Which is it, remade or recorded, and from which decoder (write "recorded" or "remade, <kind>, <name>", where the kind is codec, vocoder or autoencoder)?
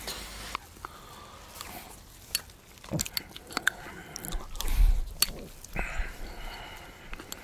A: recorded